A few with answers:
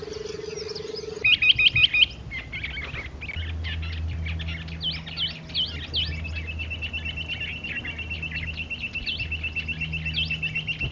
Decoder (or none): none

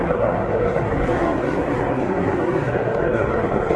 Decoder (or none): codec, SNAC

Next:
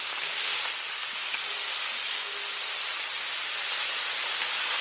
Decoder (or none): none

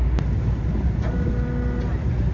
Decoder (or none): none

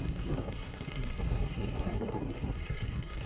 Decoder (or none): codec, SNAC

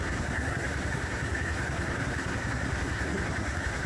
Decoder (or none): codec, SNAC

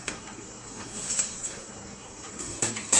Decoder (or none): codec, SNAC